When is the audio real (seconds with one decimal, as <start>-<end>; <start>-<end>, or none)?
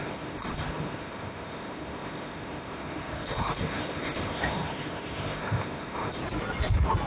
6.2-7.1